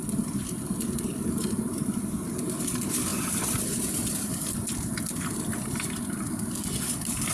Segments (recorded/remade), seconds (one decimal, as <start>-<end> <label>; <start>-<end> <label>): 0.0-7.3 recorded